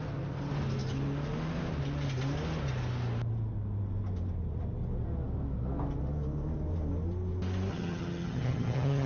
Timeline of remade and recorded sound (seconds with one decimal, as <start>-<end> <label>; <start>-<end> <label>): 0.0-7.7 recorded; 7.7-9.1 remade